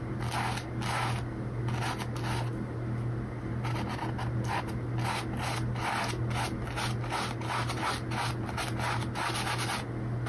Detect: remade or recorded recorded